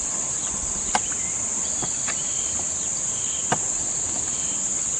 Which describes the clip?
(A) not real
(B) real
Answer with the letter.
B